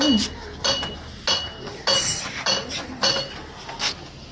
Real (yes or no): yes